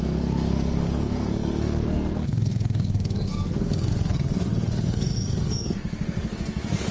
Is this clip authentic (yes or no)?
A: no